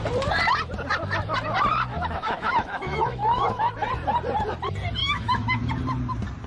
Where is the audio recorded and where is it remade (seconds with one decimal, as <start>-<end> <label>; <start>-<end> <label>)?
0.0-1.9 recorded; 1.9-3.7 remade; 3.7-5.0 recorded; 5.0-5.7 remade; 5.7-6.5 recorded